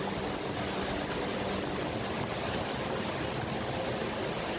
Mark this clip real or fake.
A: real